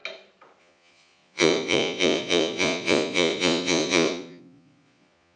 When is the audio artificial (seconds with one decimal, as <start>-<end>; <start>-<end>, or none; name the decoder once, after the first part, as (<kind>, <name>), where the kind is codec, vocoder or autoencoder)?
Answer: 0.6-5.4 (vocoder, Vocos)